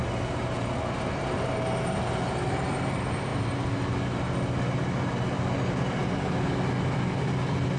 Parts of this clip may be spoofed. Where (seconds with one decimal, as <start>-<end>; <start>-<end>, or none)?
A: none